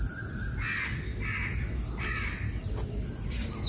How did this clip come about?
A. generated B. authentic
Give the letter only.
B